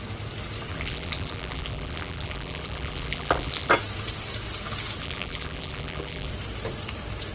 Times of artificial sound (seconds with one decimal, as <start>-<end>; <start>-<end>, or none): 0.7-3.7; 5.0-6.3